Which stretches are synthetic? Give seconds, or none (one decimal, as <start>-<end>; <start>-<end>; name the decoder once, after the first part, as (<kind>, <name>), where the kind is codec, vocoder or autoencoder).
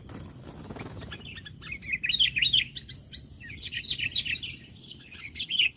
3.5-3.9 (codec, HILCodec); 4.8-5.8